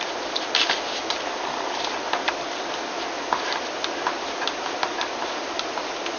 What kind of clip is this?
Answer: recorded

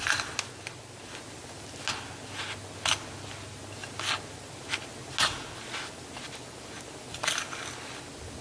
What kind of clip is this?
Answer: recorded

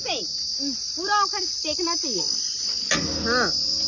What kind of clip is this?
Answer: recorded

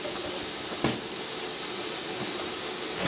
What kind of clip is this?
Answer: recorded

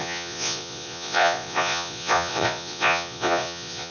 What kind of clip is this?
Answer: remade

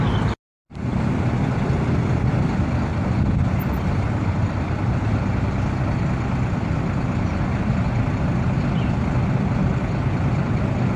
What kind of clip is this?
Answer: recorded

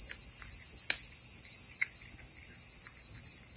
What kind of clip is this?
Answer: recorded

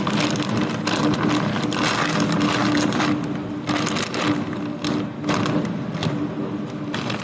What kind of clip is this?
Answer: recorded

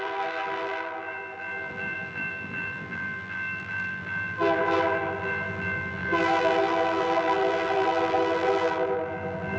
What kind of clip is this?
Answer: remade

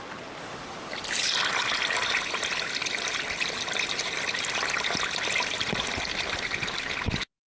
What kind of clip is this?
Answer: recorded